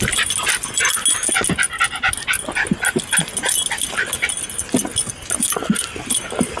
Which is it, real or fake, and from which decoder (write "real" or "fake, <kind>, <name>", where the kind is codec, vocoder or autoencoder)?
real